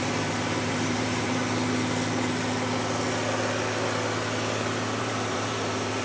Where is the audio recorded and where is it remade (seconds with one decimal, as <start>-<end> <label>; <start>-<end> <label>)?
0.0-1.4 remade; 1.4-5.0 recorded; 5.0-6.0 remade